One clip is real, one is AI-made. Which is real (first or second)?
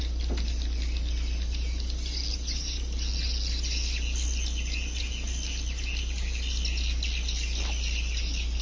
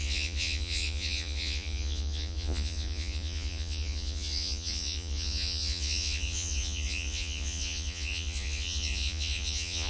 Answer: first